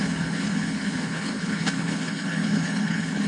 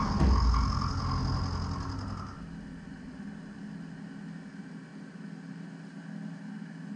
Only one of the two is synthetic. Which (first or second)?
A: first